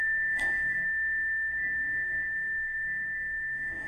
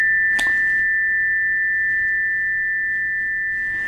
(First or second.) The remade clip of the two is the first